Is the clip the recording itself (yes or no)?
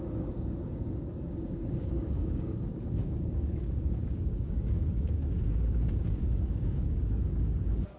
no